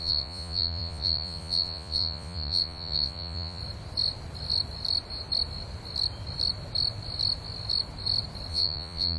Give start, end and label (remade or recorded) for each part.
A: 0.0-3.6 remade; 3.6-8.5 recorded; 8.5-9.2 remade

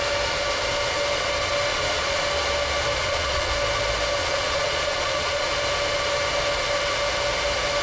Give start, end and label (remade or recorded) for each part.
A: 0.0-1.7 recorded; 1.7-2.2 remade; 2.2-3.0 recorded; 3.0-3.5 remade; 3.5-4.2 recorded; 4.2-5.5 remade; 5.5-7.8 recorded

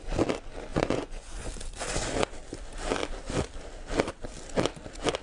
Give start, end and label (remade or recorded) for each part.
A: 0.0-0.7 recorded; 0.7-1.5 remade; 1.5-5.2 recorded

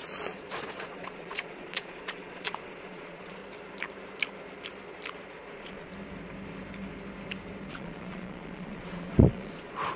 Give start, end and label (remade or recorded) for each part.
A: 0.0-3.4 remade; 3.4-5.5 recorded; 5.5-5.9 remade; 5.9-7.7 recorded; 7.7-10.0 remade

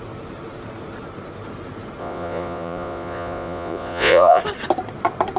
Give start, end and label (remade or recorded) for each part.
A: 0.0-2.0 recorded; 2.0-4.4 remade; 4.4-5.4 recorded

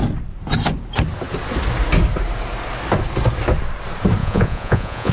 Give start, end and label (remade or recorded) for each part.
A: 0.0-4.2 recorded; 4.2-5.1 remade